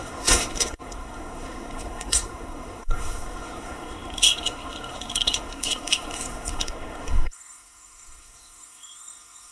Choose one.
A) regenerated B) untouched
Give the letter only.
A